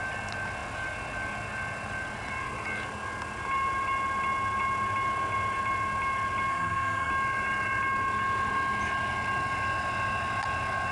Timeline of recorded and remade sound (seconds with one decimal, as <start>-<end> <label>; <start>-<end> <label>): 0.0-6.5 recorded; 6.5-7.1 remade; 7.1-10.9 recorded